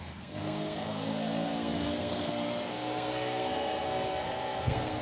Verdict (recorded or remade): remade